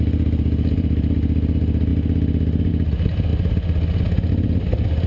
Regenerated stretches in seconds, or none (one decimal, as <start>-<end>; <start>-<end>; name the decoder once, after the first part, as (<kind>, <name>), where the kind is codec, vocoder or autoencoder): 0.0-1.9 (vocoder, BigVGAN v2); 2.7-3.3; 4.3-5.1